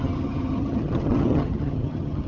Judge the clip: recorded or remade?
remade